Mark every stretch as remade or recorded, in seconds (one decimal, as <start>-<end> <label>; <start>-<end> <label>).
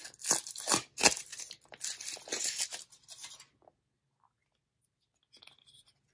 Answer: 0.0-6.1 recorded